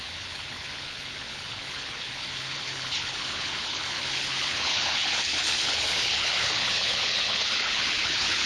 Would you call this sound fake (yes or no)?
yes